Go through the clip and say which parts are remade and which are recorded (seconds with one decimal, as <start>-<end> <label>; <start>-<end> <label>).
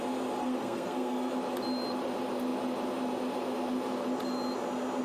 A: 0.0-0.4 recorded; 0.4-1.3 remade; 1.3-5.0 recorded